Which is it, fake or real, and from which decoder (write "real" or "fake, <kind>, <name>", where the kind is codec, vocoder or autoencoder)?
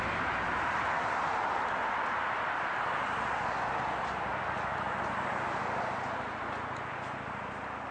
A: real